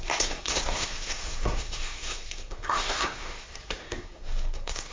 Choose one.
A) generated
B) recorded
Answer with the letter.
A